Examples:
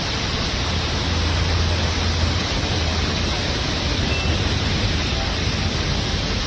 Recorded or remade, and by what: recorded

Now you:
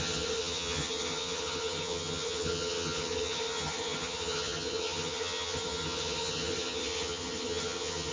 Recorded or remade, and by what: remade, vocoder, HiFi-GAN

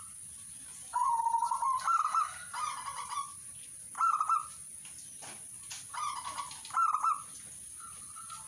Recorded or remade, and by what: recorded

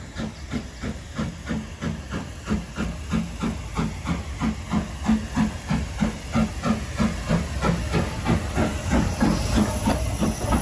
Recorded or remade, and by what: recorded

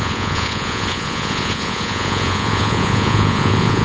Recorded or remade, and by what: remade, vocoder, Vocos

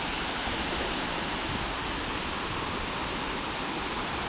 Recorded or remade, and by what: recorded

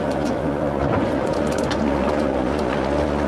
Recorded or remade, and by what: remade, vocoder, Vocos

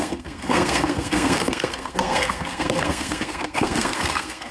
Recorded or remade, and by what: remade, codec, SNAC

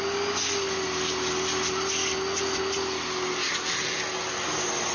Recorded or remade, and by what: recorded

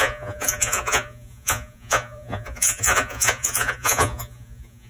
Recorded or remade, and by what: remade, vocoder, Vocos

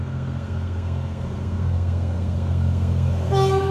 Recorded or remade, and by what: remade, codec, SNAC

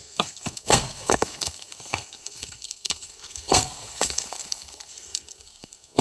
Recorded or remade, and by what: remade, codec, SNAC